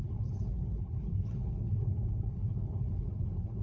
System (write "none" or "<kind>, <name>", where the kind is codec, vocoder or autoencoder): codec, HILCodec